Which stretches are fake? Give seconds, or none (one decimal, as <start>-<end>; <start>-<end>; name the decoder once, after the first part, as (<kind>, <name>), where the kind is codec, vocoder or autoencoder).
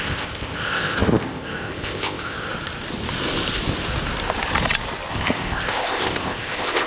0.0-2.5 (codec, ZipCodec); 5.1-6.9